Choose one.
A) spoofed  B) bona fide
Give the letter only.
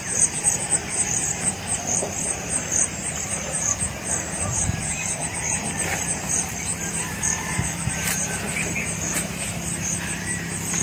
A